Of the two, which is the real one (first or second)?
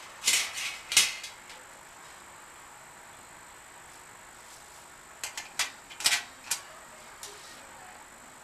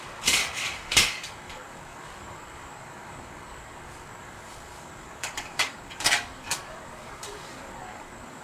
first